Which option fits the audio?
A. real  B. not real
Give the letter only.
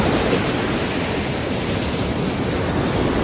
A